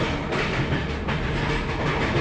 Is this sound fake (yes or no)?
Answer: no